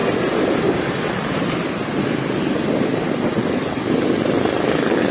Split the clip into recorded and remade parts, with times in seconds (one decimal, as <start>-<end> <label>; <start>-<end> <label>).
0.0-5.1 recorded